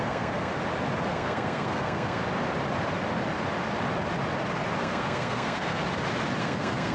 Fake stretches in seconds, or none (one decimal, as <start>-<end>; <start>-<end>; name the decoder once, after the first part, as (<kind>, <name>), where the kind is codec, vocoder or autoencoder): 0.0-0.5 (codec, SNAC); 1.1-2.2; 4.8-5.8; 6.4-6.9